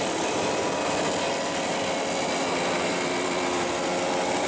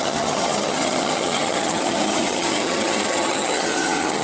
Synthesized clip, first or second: second